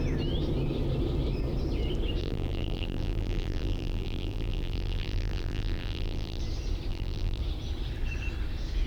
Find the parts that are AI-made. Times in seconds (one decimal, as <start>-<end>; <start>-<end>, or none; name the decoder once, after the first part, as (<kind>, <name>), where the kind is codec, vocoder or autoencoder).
2.2-6.4 (vocoder, BigVGAN v2); 6.9-7.4